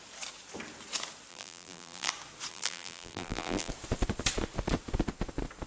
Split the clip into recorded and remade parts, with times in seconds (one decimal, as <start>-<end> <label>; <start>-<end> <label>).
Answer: 0.0-1.3 recorded; 1.3-2.1 remade; 2.1-2.5 recorded; 2.5-3.7 remade; 3.7-5.7 recorded